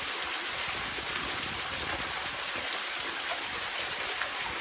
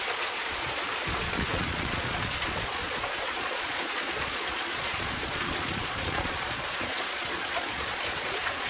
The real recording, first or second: first